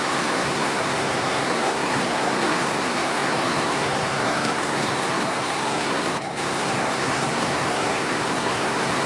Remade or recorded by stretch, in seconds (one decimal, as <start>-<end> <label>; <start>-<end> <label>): 0.0-9.1 remade